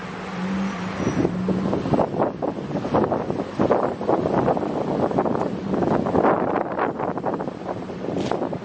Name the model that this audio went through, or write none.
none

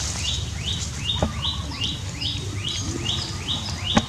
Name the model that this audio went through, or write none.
none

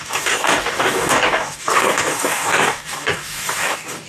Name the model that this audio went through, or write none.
codec, DAC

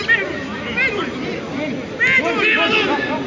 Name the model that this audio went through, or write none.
none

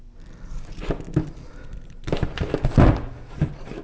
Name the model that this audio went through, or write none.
none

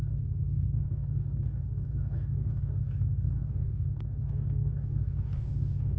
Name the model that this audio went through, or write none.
codec, DAC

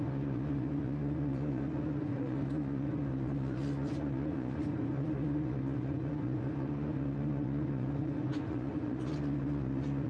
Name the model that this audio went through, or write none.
vocoder, Vocos